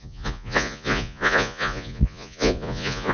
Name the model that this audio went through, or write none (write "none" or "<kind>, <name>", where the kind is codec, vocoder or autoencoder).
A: vocoder, Vocos